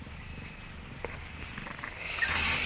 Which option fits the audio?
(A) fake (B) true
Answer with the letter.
B